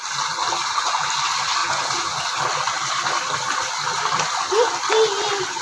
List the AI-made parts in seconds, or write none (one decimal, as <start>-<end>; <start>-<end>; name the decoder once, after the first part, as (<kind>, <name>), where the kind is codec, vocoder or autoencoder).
1.6-2.2 (vocoder, Vocos)